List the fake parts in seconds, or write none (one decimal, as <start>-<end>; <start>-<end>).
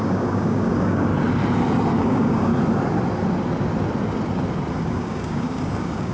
0.0-1.1; 2.0-2.5; 4.7-6.1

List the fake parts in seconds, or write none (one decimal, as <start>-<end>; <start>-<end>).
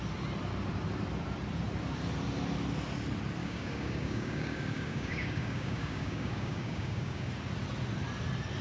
3.4-7.3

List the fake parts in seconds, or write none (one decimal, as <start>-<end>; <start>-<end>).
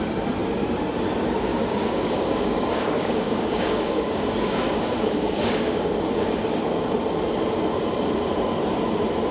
1.5-5.9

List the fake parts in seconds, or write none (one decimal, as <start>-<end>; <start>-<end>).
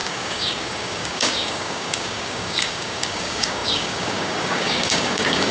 0.0-5.5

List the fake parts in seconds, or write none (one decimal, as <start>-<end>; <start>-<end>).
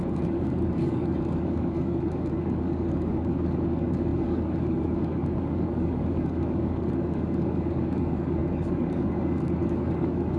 0.0-10.4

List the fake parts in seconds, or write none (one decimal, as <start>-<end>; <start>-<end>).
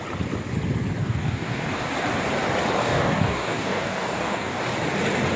1.0-1.9; 2.8-4.6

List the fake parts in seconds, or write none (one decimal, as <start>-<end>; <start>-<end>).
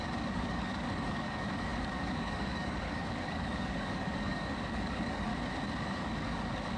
0.0-5.3; 5.8-6.8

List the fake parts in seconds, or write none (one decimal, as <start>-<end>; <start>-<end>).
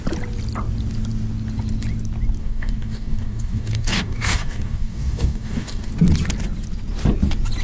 2.4-5.9